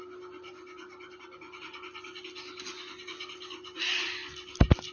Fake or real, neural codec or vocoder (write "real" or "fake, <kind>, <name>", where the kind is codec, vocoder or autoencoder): real